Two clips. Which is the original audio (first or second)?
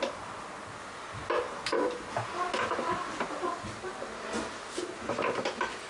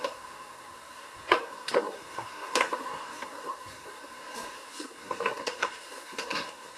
first